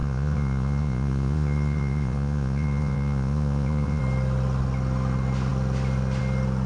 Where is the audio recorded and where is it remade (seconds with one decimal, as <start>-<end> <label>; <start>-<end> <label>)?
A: 0.0-4.0 remade; 4.0-6.7 recorded